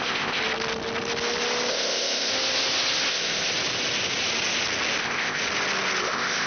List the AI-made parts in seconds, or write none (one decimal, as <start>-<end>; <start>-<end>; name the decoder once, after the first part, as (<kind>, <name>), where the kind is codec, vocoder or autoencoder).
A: 0.0-0.4 (codec, ZipCodec); 1.7-2.3; 3.1-3.5; 5.0-5.4; 6.0-6.5